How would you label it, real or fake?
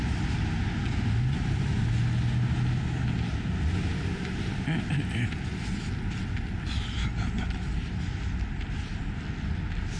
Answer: real